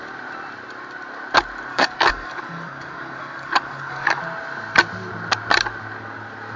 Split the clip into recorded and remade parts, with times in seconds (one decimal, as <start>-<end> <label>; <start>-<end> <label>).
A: 0.0-1.7 recorded; 1.7-4.2 remade; 4.2-6.6 recorded